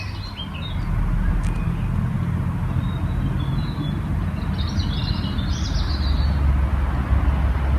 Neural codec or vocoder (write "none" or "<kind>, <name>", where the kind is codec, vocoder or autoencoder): none